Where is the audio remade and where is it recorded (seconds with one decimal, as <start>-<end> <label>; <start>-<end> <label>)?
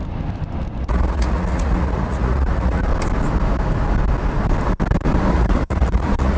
0.0-0.8 recorded; 0.8-2.9 remade; 2.9-5.3 recorded; 5.3-6.4 remade